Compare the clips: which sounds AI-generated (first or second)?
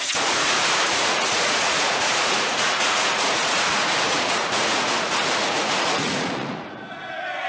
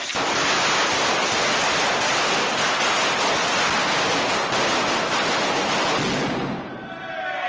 first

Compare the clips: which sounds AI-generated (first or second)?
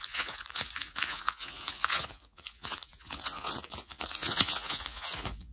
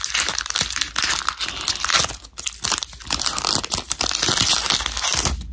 first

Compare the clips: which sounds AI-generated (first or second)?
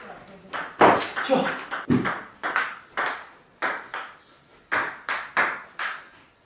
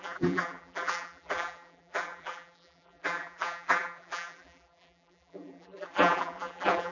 second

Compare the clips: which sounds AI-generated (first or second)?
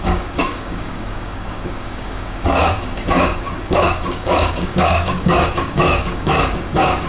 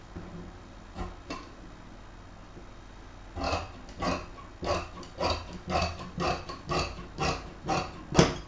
first